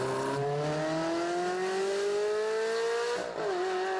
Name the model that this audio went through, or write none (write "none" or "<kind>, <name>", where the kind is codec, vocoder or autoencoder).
none